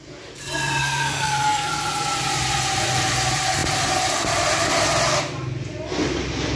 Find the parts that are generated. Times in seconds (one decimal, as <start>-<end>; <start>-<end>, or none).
0.8-1.7